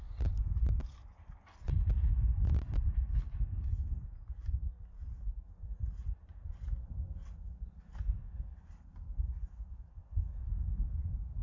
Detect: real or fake real